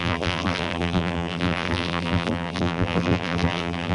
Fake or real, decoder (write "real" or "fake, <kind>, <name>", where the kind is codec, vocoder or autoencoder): fake, vocoder, BigVGAN v2